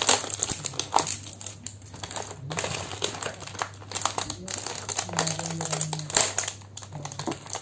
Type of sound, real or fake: real